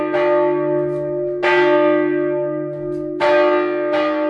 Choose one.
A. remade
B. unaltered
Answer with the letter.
B